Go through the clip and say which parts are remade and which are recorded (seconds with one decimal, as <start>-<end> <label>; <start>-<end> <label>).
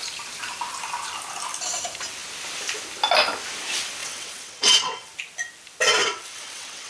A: 0.0-4.0 recorded; 4.0-5.1 remade; 5.1-6.0 recorded; 6.0-6.9 remade